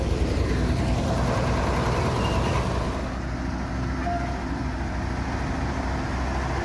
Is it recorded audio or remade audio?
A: recorded